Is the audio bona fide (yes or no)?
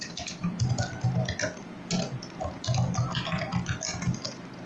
yes